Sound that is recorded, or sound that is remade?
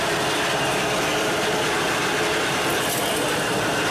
recorded